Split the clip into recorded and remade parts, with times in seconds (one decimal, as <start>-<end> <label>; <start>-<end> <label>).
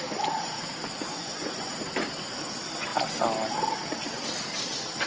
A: 0.0-1.1 recorded; 1.1-1.7 remade; 1.7-5.1 recorded